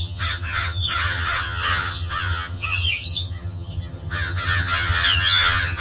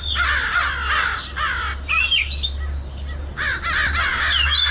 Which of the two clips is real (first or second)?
second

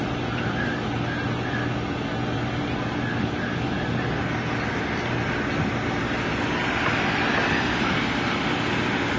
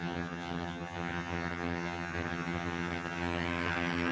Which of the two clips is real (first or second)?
first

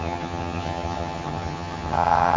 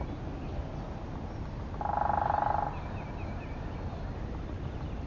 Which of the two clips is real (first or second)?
second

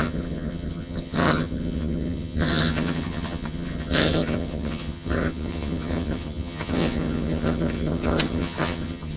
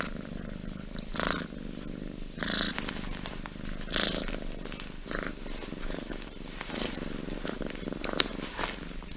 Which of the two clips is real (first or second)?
second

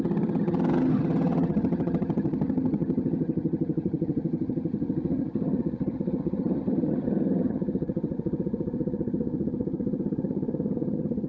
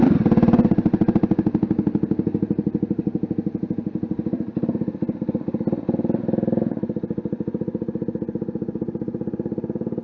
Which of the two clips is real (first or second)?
second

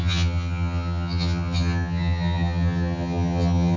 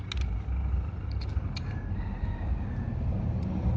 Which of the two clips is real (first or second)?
second